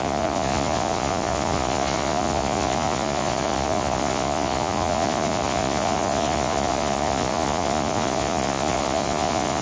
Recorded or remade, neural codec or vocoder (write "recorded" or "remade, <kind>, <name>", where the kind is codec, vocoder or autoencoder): remade, vocoder, Vocos